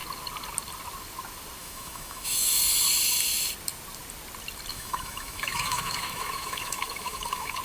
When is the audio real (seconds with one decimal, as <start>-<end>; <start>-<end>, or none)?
0.0-1.6; 2.5-4.7